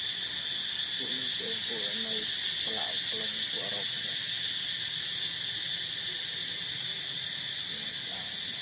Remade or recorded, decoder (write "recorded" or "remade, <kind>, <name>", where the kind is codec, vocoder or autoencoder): recorded